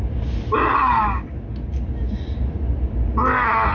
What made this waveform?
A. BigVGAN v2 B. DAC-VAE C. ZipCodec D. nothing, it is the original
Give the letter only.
D